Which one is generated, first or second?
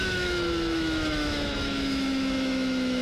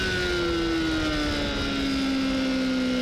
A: first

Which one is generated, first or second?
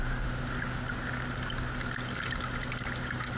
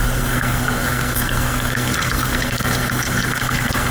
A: second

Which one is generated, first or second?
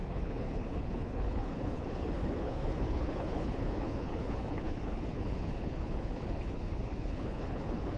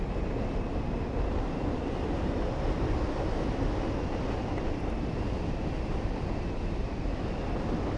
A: first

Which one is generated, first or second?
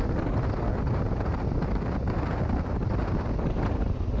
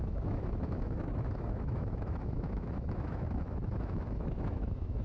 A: second